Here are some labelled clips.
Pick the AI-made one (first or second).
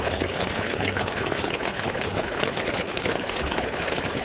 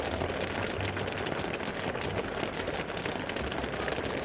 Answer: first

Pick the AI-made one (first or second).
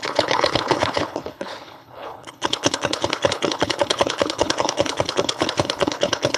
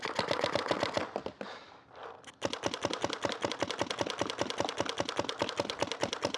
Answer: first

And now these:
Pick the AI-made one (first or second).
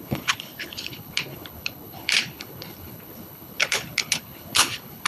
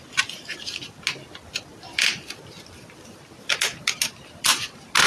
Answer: first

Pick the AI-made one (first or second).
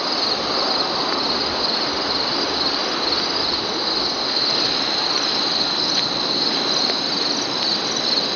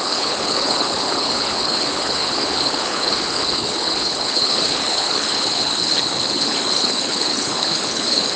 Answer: second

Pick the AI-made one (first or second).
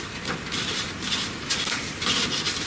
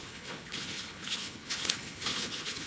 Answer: second